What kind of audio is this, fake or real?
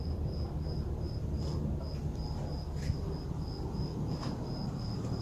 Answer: real